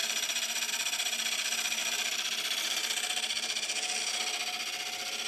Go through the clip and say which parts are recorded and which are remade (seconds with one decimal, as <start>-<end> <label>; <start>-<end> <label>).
0.0-0.7 remade; 0.7-1.8 recorded; 1.8-4.0 remade; 4.0-5.3 recorded